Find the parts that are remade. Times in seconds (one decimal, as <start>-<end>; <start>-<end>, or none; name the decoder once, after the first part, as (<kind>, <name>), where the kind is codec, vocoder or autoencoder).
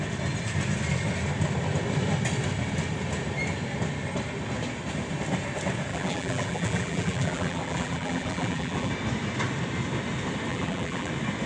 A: 5.9-8.9 (vocoder, BigVGAN v2); 10.5-11.1